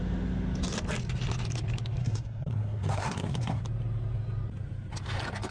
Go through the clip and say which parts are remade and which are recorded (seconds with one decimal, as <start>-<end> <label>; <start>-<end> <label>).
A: 0.0-2.0 recorded; 2.0-3.6 remade; 3.6-5.5 recorded